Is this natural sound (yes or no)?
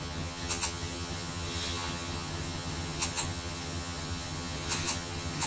no